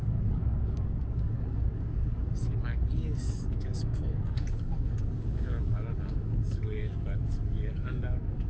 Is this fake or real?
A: fake